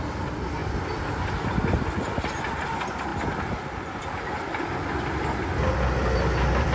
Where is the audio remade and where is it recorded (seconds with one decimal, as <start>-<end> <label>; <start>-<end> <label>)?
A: 0.0-6.7 recorded